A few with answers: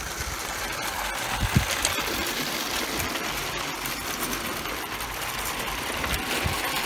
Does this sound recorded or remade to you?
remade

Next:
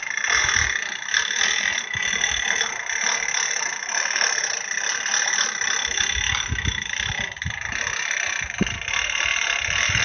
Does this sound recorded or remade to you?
remade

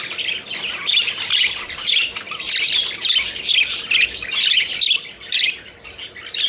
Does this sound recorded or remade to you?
recorded